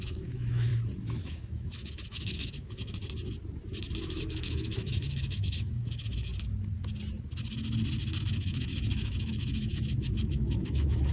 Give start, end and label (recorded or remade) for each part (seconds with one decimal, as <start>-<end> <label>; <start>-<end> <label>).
0.0-0.7 remade; 0.7-1.2 recorded; 1.2-3.0 remade; 3.0-4.0 recorded; 4.0-6.3 remade; 6.3-8.2 recorded; 8.2-11.1 remade